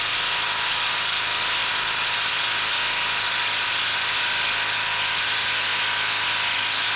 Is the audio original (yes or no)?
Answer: yes